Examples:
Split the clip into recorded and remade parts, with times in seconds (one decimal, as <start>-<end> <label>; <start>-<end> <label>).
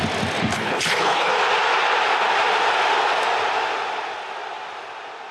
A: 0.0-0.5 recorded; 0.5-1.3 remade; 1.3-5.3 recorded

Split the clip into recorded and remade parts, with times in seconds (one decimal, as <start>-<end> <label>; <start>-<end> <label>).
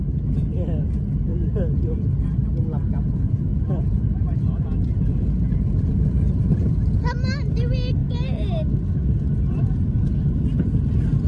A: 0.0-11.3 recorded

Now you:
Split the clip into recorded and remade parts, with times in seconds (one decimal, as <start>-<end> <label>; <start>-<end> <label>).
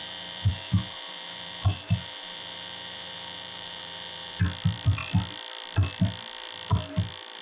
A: 0.0-4.4 remade; 4.4-7.4 recorded